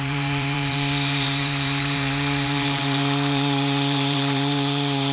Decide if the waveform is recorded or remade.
remade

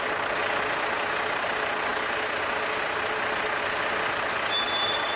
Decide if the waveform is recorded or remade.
recorded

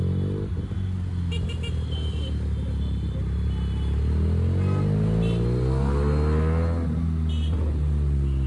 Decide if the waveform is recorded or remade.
recorded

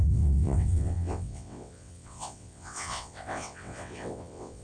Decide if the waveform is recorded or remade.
remade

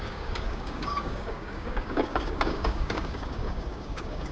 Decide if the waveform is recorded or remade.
remade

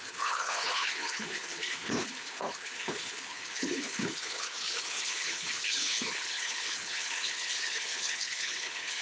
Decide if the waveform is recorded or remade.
remade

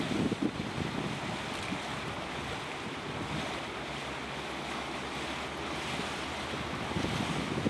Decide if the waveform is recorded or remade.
recorded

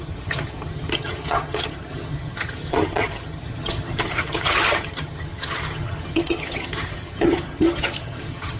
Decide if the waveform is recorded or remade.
remade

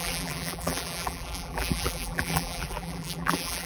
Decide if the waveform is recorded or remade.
remade